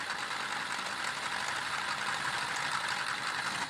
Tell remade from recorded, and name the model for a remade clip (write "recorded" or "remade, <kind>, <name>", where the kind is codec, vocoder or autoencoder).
recorded